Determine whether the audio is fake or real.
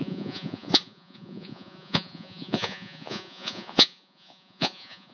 fake